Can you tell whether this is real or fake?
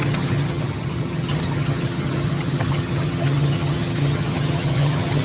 fake